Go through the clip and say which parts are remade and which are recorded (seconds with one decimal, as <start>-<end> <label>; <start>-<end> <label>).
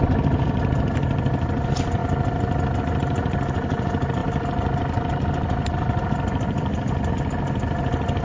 0.0-8.2 recorded